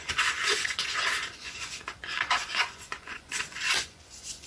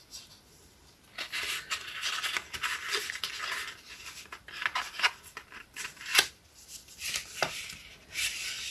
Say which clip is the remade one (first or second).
first